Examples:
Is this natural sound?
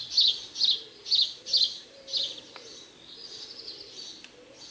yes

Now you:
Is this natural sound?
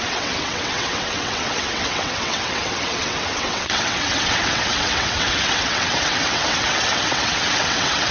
no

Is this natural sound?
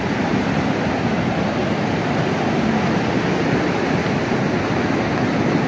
yes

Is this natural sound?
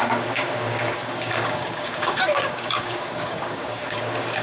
no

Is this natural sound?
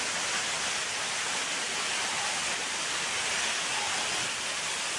yes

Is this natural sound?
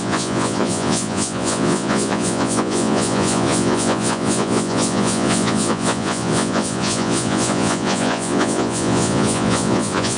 no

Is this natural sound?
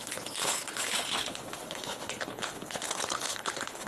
no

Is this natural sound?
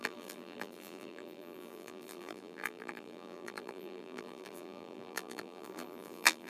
no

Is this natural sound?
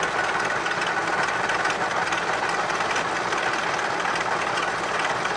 yes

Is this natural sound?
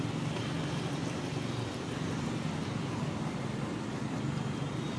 yes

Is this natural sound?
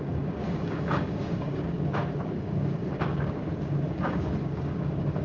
no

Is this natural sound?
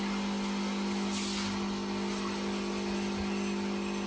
yes